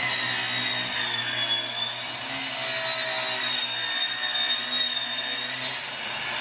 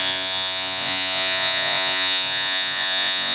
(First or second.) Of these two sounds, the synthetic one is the second